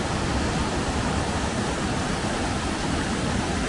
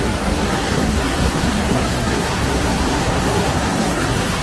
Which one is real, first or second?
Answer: first